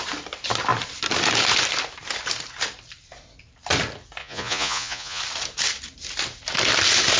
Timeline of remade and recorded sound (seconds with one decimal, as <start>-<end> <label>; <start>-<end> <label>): 0.0-4.2 recorded; 4.2-5.2 remade; 5.2-7.2 recorded